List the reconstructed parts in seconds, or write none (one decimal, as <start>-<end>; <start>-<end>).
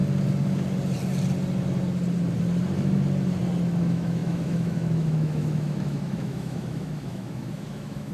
3.8-8.1